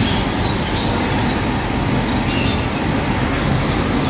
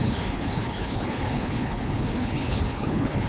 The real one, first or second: first